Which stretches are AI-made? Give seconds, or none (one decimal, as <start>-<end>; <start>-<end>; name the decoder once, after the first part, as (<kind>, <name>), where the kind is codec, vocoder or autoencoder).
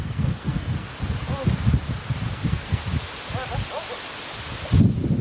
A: 0.0-0.9 (codec, SNAC); 2.3-2.8